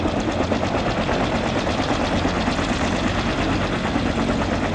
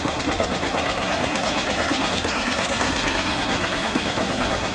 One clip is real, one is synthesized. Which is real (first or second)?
first